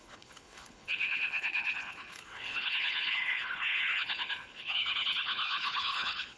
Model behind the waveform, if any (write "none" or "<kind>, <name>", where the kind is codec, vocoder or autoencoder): codec, HILCodec